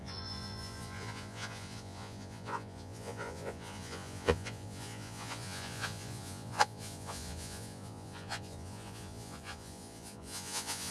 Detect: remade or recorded remade